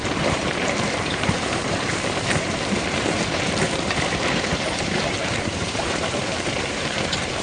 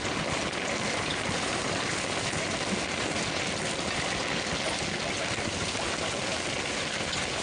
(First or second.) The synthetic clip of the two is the first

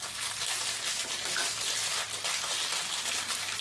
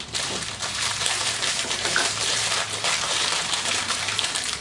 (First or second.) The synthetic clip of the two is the second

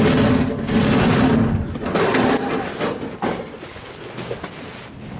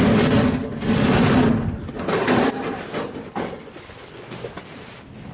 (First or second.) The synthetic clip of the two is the second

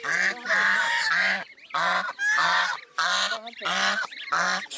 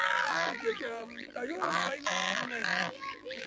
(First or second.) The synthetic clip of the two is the second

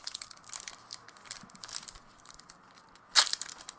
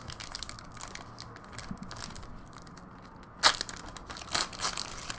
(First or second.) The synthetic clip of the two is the first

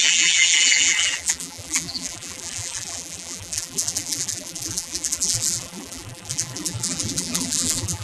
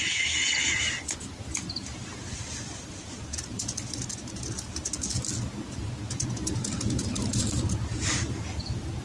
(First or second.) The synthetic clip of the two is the first